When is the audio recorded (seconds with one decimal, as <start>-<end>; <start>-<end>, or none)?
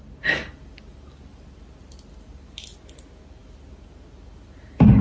0.0-5.0